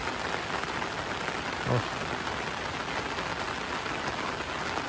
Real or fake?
real